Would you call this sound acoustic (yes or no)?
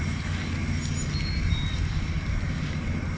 yes